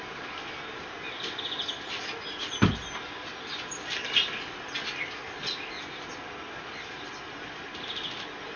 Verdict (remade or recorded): recorded